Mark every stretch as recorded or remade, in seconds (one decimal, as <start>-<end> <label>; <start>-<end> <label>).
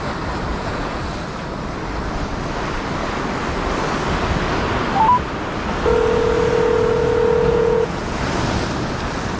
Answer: 0.0-0.5 recorded; 0.5-1.0 remade; 1.0-7.5 recorded; 7.5-8.2 remade; 8.2-9.4 recorded